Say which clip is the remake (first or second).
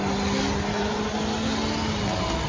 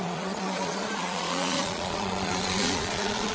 second